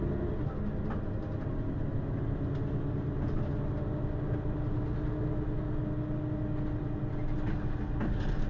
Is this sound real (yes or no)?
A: yes